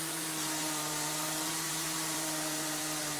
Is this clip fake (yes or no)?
yes